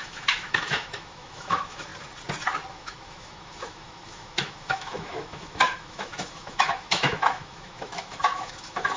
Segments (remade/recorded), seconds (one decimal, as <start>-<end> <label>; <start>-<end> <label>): 0.0-1.9 remade; 1.9-2.7 recorded; 2.7-9.0 remade